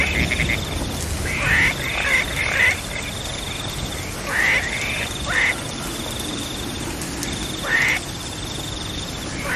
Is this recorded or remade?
recorded